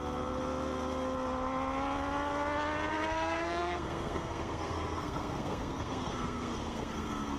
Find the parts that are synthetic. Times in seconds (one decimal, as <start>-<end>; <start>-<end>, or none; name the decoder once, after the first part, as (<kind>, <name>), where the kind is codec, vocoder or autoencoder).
2.9-7.4 (codec, SNAC)